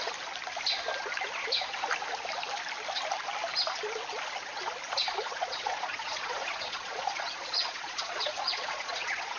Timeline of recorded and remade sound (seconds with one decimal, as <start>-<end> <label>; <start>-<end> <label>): 0.0-5.1 recorded; 5.1-9.4 remade